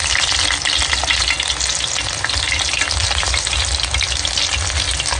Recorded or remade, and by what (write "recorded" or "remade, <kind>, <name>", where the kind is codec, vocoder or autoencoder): recorded